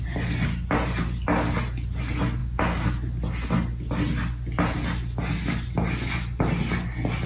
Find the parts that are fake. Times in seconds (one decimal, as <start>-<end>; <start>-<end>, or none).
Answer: none